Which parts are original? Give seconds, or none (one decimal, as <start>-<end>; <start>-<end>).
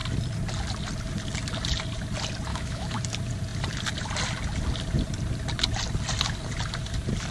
0.0-2.5; 3.0-7.3